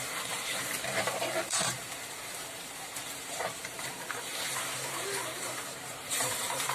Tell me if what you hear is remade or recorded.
remade